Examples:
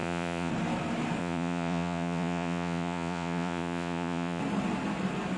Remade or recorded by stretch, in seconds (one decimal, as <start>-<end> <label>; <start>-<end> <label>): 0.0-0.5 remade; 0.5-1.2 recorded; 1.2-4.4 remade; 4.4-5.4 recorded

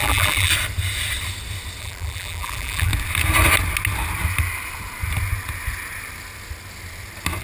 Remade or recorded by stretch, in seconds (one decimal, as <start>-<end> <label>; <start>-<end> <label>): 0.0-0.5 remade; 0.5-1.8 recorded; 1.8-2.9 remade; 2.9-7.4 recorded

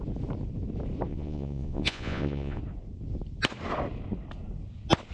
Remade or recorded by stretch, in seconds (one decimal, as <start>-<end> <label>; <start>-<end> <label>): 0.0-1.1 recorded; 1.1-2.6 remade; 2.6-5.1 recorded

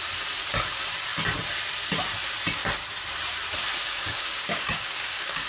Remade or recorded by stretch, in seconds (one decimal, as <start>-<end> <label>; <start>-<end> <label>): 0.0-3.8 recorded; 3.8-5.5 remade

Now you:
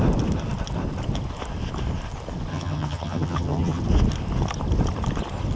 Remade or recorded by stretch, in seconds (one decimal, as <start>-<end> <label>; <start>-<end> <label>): 0.0-2.5 recorded; 2.5-3.8 remade; 3.8-5.6 recorded

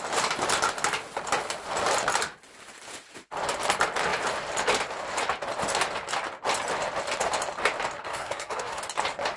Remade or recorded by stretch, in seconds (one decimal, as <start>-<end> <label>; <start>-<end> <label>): 0.0-8.1 recorded; 8.1-8.8 remade; 8.8-9.4 recorded